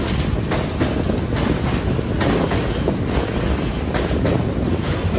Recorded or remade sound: recorded